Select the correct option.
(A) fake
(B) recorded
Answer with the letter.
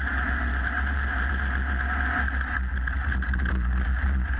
B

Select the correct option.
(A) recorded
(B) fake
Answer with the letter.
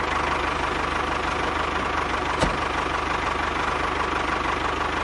A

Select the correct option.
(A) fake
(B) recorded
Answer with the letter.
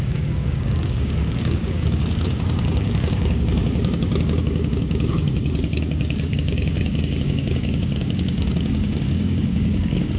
A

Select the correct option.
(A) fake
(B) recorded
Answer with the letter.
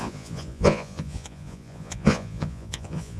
A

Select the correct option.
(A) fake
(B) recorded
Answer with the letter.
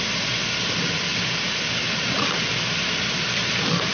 A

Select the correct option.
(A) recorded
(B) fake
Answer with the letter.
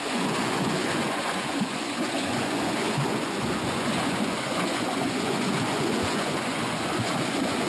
B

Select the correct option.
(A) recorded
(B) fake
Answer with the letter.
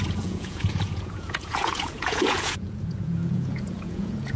B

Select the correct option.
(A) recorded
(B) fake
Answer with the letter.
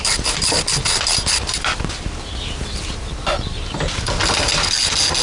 A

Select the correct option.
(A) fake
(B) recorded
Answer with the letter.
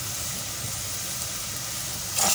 B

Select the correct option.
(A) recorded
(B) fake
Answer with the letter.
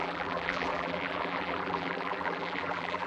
B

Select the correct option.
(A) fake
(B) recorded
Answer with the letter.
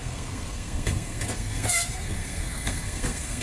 A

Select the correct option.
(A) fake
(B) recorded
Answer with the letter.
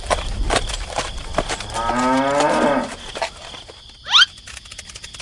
B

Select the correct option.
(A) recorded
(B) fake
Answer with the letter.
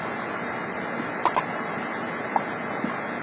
A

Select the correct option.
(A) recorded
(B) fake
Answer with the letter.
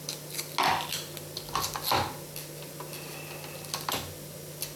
A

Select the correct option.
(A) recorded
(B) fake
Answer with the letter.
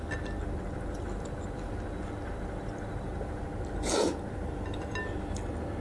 A